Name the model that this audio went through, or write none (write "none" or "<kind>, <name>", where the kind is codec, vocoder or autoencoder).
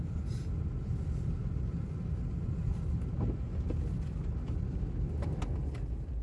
none